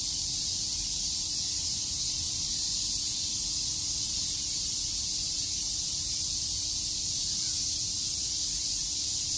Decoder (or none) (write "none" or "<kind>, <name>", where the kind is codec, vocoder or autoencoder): vocoder, BigVGAN v2